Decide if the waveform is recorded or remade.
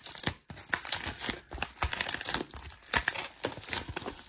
recorded